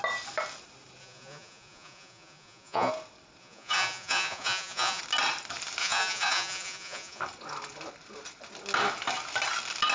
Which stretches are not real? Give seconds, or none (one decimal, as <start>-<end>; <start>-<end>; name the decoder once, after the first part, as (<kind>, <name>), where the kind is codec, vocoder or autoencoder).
1.0-2.9 (vocoder, Vocos); 3.4-5.0; 5.8-7.2

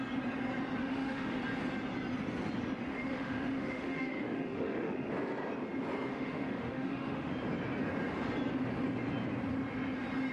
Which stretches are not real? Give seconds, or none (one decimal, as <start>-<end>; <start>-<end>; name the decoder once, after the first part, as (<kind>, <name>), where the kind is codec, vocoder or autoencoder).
0.8-1.4 (autoencoder, DAC-VAE); 2.9-5.1; 6.1-7.3

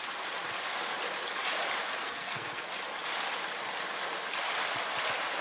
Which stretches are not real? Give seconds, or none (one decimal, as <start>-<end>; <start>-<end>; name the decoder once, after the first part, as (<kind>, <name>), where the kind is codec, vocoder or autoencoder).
2.0-2.7 (codec, SNAC)